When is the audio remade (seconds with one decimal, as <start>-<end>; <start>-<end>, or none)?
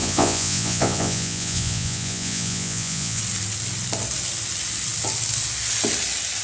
0.0-3.2